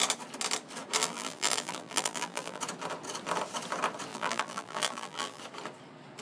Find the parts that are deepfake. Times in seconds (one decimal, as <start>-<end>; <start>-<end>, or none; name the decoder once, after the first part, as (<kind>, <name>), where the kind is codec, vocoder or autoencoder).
1.0-2.6 (vocoder, BigVGAN v2); 4.1-5.4